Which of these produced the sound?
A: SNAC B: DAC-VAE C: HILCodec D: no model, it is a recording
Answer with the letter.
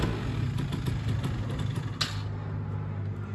D